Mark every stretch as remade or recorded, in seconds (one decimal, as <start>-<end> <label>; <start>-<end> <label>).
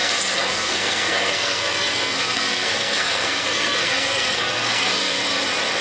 0.0-5.2 remade; 5.2-5.8 recorded